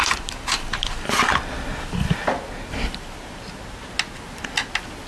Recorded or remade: recorded